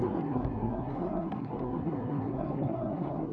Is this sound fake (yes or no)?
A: yes